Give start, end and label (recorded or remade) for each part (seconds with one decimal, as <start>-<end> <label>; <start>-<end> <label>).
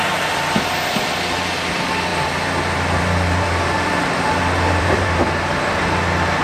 0.0-2.1 recorded; 2.1-5.2 remade; 5.2-6.4 recorded